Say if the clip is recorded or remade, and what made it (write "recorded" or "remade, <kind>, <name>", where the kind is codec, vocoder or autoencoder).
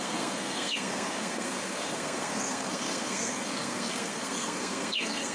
remade, codec, SNAC